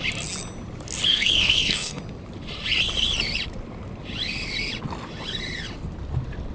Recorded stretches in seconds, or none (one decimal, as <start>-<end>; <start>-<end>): 0.0-1.1; 2.0-6.5